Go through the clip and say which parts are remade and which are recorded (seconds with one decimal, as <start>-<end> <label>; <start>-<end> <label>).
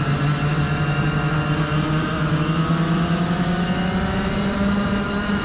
0.0-5.4 recorded